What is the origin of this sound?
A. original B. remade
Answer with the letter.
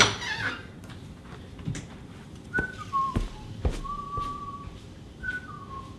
A